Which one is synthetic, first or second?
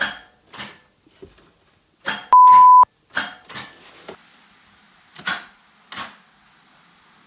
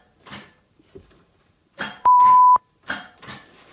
second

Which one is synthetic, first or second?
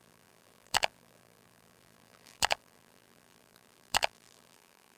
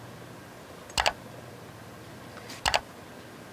first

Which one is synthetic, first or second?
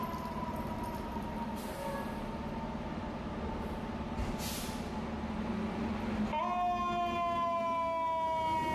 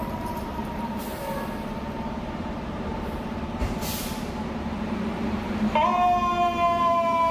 second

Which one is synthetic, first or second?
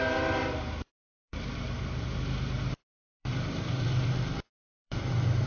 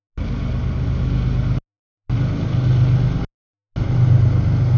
first